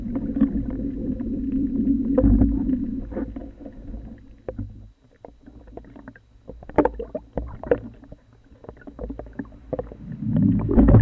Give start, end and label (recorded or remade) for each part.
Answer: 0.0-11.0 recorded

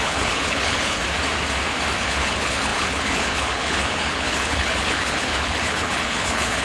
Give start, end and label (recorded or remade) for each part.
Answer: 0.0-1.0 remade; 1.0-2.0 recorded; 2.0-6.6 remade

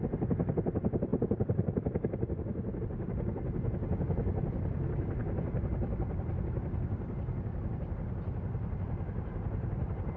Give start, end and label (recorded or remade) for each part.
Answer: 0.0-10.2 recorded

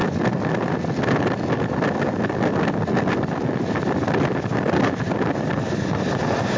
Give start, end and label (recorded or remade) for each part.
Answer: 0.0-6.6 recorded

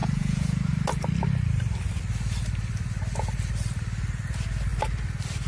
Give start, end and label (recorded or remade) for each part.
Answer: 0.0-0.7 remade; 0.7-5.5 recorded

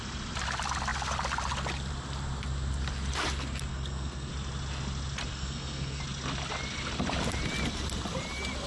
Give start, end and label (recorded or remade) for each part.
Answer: 0.0-3.7 recorded; 3.7-4.3 remade; 4.3-5.3 recorded; 5.3-6.0 remade; 6.0-8.7 recorded

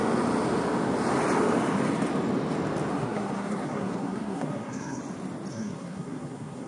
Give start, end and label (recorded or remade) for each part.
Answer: 0.0-2.9 recorded; 2.9-5.0 remade; 5.0-5.5 recorded; 5.5-6.7 remade